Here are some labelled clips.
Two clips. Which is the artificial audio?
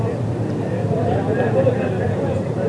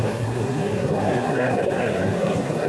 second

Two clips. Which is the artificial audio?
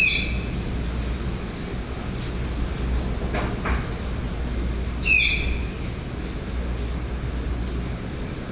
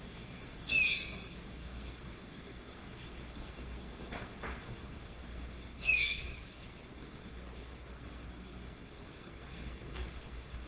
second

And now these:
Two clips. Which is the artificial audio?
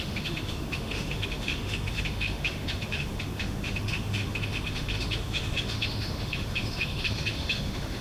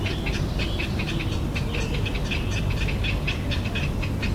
first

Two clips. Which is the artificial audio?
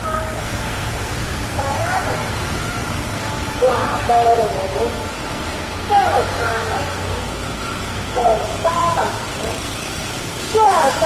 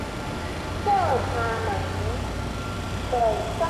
first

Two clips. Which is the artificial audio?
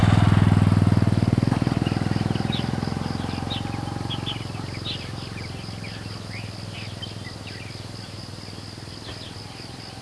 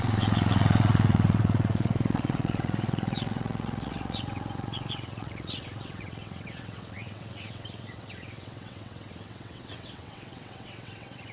second